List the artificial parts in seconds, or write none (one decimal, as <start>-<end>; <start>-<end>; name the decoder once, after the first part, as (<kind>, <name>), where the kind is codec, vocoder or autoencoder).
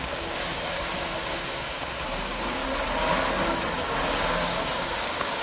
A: 0.0-2.6 (codec, DAC); 3.9-5.4